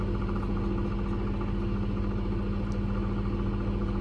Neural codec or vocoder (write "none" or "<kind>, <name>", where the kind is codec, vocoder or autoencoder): none